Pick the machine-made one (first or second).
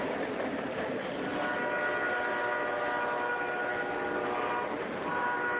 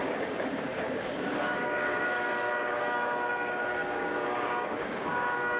second